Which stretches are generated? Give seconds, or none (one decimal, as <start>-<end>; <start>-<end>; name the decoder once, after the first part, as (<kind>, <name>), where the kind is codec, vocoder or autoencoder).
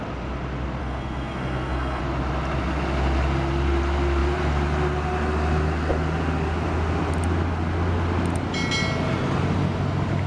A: 0.8-2.0 (codec, SNAC)